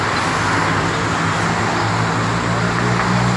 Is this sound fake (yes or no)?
no